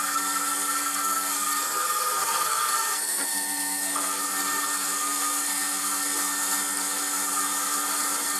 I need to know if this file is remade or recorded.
remade